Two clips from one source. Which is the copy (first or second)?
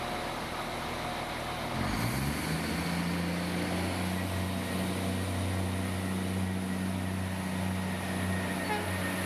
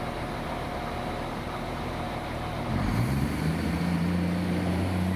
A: second